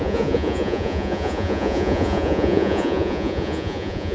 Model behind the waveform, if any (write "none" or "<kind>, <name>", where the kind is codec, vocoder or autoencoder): vocoder, Vocos